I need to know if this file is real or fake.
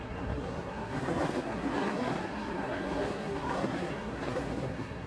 fake